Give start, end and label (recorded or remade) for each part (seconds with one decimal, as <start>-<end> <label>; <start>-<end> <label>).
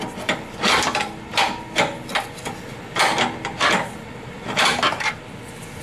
0.0-5.8 recorded